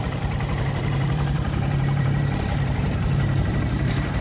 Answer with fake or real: fake